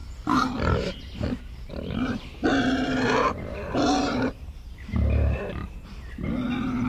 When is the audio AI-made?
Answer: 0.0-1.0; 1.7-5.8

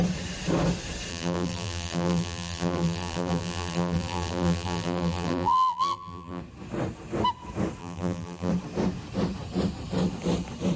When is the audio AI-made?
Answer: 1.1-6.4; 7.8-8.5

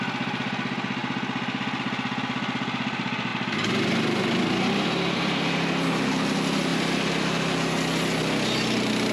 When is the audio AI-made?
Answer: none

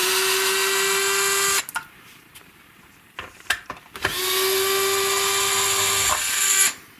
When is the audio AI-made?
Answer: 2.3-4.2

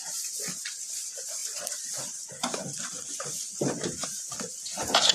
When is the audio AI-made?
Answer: 0.0-5.1

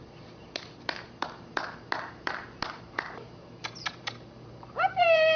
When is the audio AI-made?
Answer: 0.0-5.4

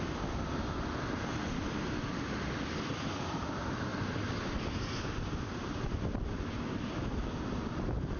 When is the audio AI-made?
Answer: 3.9-6.4

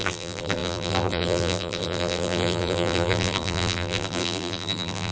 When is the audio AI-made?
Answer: 0.0-5.1